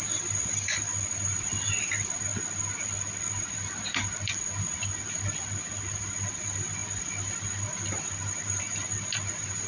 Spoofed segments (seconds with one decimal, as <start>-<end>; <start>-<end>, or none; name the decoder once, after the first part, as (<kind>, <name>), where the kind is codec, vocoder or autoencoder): none